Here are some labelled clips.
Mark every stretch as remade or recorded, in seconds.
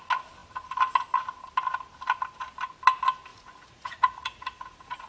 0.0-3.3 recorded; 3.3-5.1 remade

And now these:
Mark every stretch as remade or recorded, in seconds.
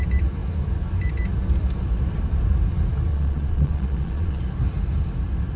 0.0-3.1 recorded; 3.1-4.4 remade; 4.4-5.6 recorded